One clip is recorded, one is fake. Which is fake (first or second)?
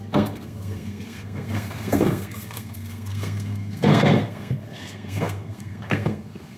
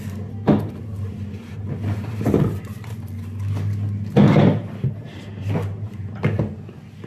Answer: first